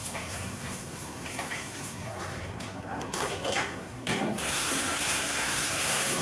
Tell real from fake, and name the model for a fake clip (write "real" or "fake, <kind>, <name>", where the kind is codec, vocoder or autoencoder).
fake, codec, SNAC